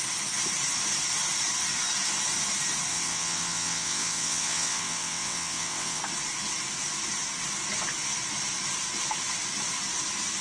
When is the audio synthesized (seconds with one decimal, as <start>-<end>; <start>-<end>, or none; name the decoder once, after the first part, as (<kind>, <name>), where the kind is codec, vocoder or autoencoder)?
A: 2.9-6.0 (vocoder, WaveNeXt)

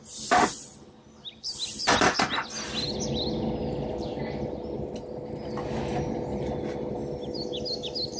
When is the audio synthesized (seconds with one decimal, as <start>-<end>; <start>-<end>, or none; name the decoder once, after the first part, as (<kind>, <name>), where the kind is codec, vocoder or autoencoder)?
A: none